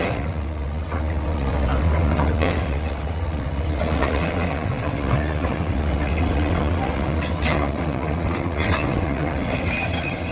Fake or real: fake